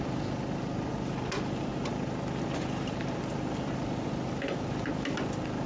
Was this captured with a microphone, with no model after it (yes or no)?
yes